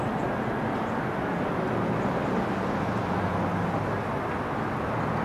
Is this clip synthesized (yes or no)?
no